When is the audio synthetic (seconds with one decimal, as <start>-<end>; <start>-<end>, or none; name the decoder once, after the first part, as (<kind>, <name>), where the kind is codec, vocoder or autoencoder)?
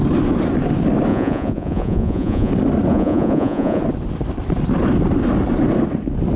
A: 1.1-2.5 (vocoder, Vocos); 2.9-3.8